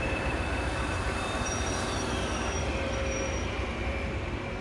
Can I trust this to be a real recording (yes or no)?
no